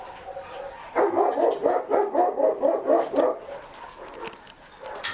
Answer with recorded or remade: recorded